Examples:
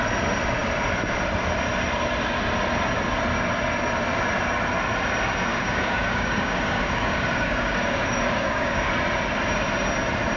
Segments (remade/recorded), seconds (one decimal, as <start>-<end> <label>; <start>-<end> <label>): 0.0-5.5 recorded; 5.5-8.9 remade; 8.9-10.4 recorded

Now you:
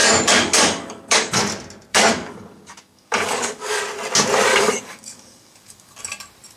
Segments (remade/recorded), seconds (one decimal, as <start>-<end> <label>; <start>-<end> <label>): 0.0-1.4 remade; 1.4-1.9 recorded; 1.9-3.8 remade; 3.8-4.5 recorded; 4.5-6.0 remade; 6.0-6.6 recorded

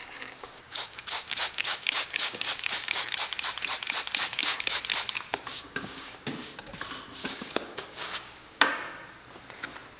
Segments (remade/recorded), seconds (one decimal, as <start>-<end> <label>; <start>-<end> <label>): 0.0-3.1 remade; 3.1-4.2 recorded; 4.2-4.8 remade; 4.8-5.5 recorded; 5.5-6.7 remade; 6.7-7.2 recorded; 7.2-8.7 remade; 8.7-10.0 recorded